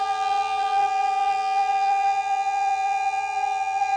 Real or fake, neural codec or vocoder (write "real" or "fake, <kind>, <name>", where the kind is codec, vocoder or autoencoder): fake, vocoder, BigVGAN v2